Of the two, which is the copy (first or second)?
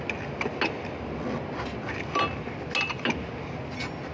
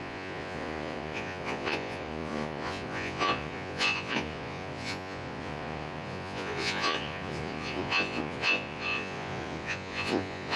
second